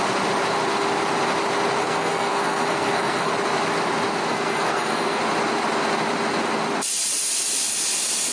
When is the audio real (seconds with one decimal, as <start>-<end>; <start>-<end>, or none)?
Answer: 0.0-1.8; 3.3-4.3; 5.2-8.3